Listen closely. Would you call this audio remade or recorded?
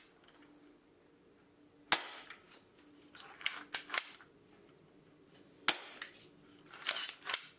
recorded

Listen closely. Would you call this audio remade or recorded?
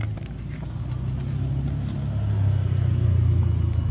recorded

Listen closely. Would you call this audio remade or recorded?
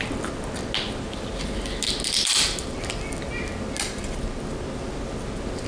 recorded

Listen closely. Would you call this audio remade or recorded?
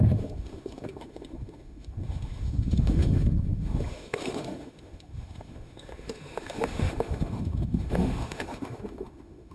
remade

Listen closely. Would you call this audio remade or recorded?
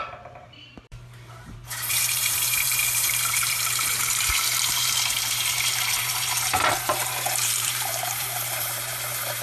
remade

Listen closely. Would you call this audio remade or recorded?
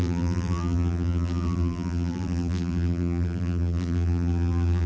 remade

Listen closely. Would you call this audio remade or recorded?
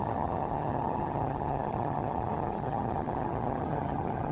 remade